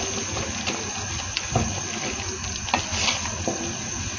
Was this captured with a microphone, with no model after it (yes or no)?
yes